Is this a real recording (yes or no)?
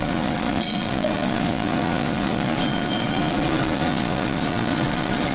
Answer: no